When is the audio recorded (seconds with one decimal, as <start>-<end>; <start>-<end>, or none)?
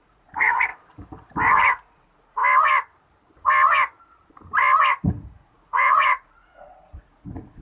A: 0.7-1.5; 2.4-5.1